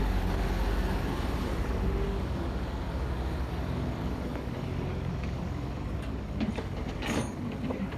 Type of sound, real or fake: fake